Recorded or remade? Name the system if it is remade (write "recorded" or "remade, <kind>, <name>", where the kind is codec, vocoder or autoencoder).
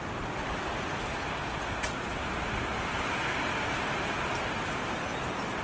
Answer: recorded